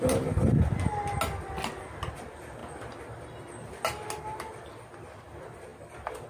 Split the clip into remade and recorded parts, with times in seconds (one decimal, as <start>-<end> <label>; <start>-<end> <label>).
0.0-6.3 recorded